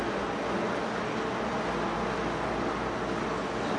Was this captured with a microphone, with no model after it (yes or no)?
yes